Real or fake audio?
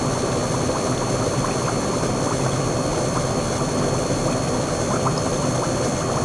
real